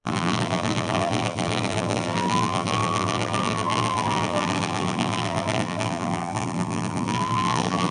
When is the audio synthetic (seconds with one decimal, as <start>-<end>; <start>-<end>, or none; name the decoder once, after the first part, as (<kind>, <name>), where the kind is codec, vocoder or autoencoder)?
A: 0.0-7.9 (vocoder, BigVGAN v2)